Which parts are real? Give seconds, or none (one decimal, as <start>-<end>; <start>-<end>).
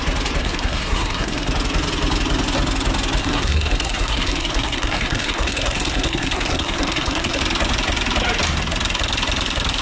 0.0-0.4; 1.5-3.2; 7.4-9.8